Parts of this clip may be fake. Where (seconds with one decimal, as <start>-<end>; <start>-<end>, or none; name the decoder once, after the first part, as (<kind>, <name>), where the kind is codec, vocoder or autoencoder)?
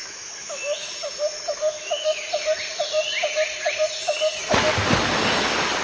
0.0-0.9 (autoencoder, DAC-VAE); 1.7-2.2